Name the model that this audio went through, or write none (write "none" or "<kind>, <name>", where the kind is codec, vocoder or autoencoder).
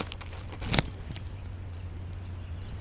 none